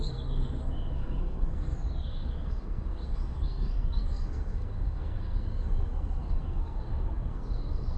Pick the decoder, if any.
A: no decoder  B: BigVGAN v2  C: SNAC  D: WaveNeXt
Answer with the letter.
C